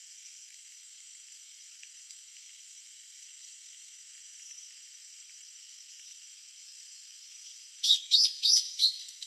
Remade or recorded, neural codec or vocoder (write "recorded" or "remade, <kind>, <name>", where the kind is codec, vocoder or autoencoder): remade, codec, SNAC